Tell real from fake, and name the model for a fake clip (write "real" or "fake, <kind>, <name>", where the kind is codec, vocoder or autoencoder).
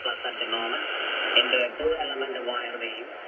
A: real